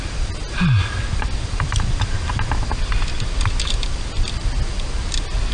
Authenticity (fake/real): real